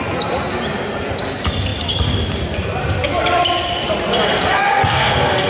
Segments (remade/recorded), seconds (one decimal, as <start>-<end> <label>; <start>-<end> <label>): 0.0-4.8 recorded; 4.8-5.5 remade